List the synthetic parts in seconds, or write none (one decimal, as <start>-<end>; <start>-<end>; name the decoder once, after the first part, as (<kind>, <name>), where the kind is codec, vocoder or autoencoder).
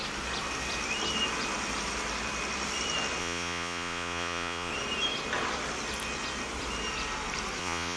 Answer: 3.2-4.7 (vocoder, Vocos); 7.6-8.0